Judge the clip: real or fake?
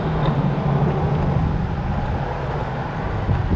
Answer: real